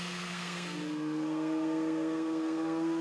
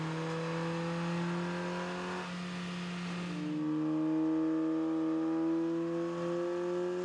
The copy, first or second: first